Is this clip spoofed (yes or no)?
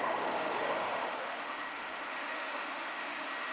yes